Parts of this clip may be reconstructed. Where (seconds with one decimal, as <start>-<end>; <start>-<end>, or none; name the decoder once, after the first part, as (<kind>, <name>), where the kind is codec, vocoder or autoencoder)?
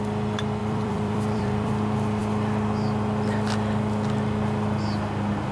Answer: 0.6-1.7 (vocoder, BigVGAN v2)